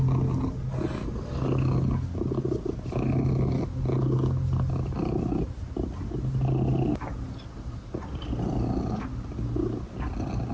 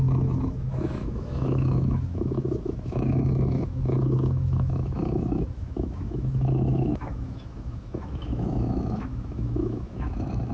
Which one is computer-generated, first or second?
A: second